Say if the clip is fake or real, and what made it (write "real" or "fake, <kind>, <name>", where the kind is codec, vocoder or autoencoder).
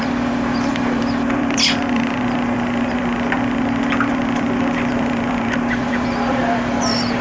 fake, vocoder, BigVGAN v2